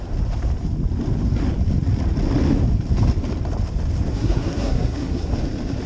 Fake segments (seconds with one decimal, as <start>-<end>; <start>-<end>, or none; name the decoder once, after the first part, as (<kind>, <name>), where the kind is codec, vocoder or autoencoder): 4.1-5.3 (codec, SNAC)